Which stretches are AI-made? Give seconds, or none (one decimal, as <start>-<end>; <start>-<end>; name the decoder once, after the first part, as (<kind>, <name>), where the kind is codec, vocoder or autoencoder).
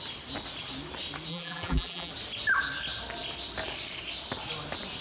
1.3-2.1 (vocoder, BigVGAN v2)